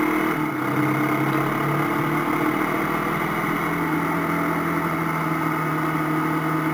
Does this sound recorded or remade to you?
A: recorded